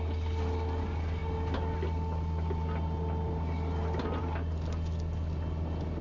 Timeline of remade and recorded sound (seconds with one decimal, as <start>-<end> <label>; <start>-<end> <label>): 0.0-6.0 recorded